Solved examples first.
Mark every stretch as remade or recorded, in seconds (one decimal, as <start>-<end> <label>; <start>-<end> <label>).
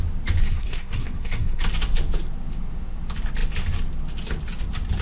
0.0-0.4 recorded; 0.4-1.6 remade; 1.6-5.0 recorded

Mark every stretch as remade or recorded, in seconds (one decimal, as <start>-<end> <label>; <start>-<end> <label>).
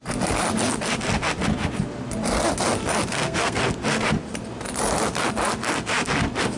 0.0-3.1 recorded; 3.1-3.6 remade; 3.6-6.6 recorded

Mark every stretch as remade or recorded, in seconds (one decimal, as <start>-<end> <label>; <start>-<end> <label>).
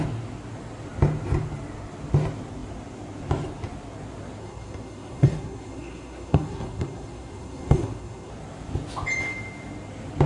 0.0-4.4 recorded; 4.4-8.3 remade; 8.3-10.3 recorded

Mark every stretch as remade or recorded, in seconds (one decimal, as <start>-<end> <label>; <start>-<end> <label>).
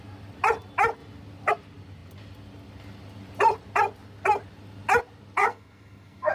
0.0-5.4 recorded; 5.4-6.3 remade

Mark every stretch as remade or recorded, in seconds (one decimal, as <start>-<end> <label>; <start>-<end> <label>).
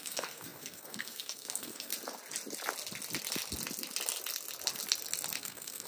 0.0-1.9 remade; 1.9-5.4 recorded; 5.4-5.9 remade